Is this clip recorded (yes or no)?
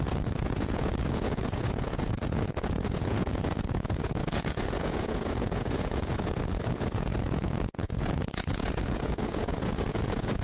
no